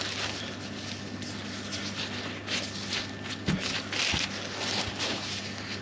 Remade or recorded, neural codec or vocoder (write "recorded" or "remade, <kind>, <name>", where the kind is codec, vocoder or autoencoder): recorded